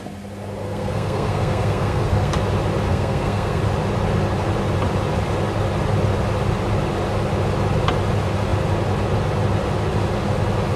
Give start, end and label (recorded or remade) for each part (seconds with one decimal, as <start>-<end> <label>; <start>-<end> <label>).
0.0-0.6 recorded; 0.6-2.4 remade; 2.4-2.9 recorded; 2.9-3.6 remade; 3.6-10.8 recorded